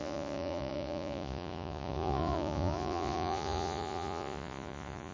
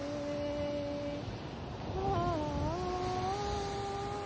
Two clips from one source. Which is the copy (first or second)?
first